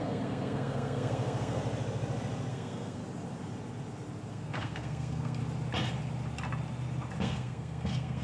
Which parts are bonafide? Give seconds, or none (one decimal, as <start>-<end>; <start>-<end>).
1.6-2.5; 3.0-4.3; 5.4-7.2